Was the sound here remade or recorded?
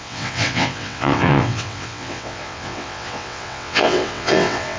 remade